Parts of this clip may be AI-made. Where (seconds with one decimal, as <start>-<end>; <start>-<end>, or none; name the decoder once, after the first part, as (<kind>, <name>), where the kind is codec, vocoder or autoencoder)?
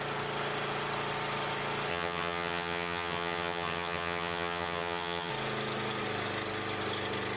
1.9-5.3 (vocoder, HiFi-GAN)